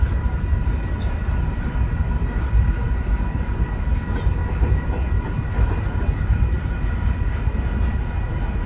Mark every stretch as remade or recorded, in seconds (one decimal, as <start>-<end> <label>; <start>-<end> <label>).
0.0-8.7 recorded